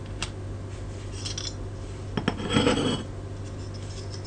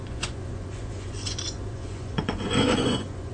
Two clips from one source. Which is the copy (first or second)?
second